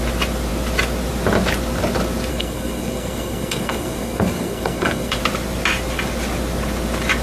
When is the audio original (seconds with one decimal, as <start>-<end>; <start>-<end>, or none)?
0.0-2.3; 5.2-7.2